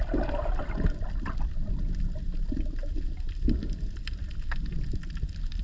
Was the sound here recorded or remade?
recorded